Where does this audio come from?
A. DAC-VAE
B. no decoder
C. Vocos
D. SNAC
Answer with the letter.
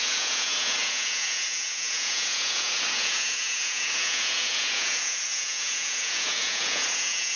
C